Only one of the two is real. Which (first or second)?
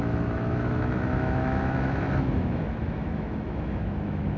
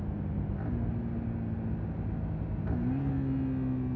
second